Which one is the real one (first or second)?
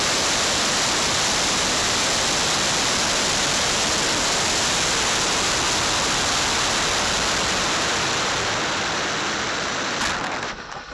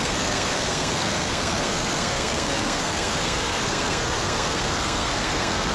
first